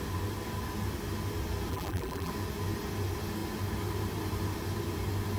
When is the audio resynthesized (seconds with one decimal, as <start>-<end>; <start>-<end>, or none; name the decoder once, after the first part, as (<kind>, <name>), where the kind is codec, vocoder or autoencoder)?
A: 1.7-2.3 (vocoder, BigVGAN v2)